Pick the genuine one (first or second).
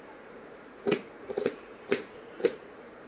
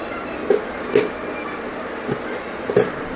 second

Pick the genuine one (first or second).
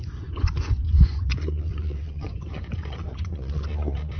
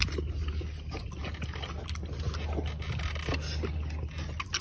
second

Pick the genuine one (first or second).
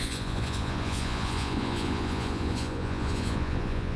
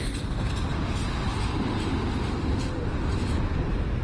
second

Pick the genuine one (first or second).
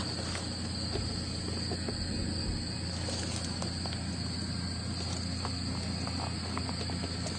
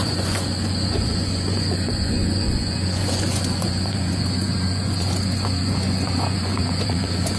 first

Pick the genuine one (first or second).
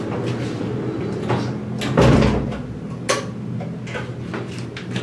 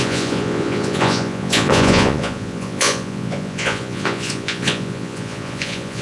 first